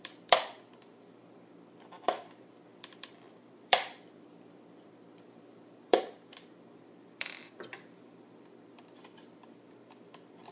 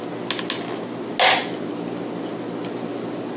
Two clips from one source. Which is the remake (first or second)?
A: first